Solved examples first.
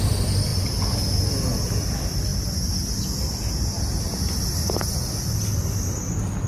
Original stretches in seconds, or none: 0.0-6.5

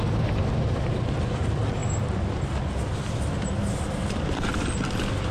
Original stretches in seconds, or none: 0.0-5.3